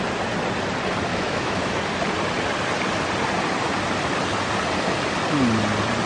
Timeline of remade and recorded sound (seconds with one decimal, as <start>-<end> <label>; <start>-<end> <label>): 0.0-1.1 recorded; 1.1-1.7 remade; 1.7-6.1 recorded